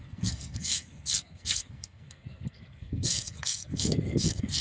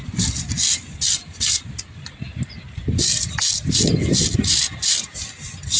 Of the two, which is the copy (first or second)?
first